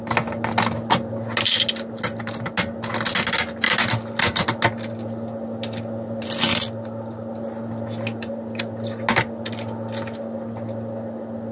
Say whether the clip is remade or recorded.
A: recorded